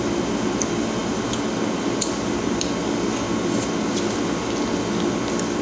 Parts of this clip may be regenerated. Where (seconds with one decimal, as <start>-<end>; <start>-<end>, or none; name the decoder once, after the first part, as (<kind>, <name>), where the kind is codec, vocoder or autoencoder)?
none